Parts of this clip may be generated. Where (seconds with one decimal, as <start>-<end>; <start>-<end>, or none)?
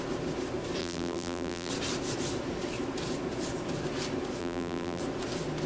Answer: 0.8-1.7; 4.4-5.0